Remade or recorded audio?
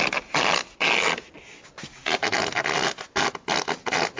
recorded